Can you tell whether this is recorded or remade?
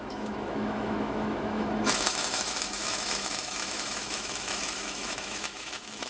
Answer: remade